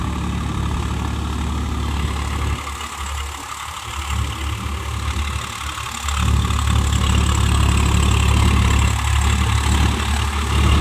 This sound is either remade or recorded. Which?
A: recorded